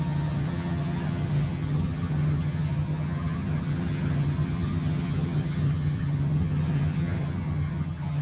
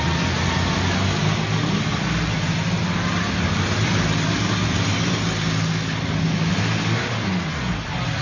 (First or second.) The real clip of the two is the second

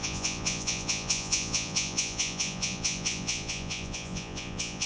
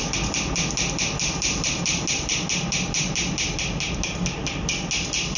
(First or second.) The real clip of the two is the second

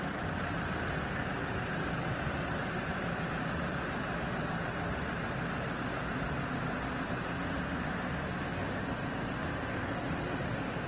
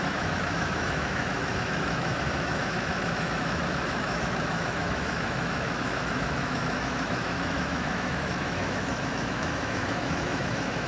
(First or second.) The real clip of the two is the first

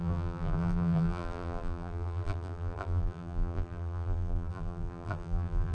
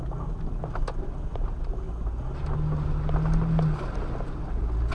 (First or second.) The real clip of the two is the second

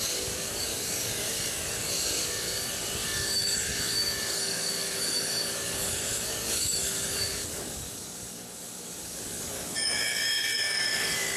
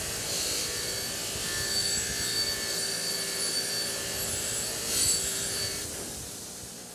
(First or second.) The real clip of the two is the second